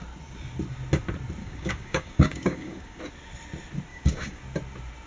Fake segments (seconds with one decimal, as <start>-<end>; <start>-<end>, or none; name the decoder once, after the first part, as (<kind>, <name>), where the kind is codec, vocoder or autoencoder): 1.4-3.0 (codec, DAC); 3.9-4.4